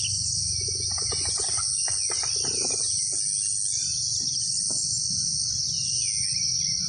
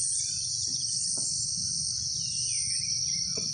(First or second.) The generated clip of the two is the second